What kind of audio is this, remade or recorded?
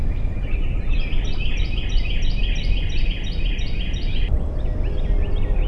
recorded